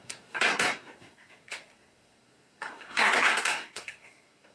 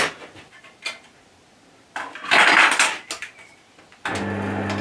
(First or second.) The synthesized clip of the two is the first